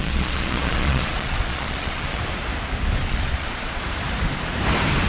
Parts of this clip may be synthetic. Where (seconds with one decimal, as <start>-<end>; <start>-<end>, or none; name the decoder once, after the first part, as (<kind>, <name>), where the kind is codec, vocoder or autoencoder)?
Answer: 0.0-2.2 (vocoder, Vocos); 3.0-3.8